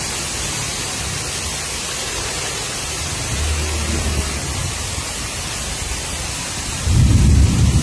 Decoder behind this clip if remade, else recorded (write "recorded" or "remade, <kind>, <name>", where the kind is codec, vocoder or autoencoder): recorded